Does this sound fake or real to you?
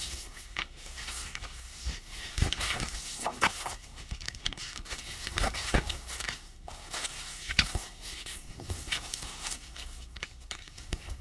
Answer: fake